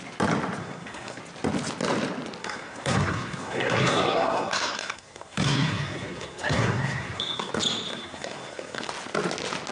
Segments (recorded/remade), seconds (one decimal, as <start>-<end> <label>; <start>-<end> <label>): 0.0-0.6 recorded; 0.6-1.2 remade; 1.2-2.4 recorded; 2.4-7.5 remade; 7.5-7.9 recorded; 7.9-8.9 remade; 8.9-9.7 recorded